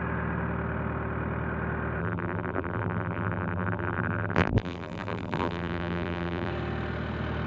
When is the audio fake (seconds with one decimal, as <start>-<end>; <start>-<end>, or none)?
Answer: 2.0-6.5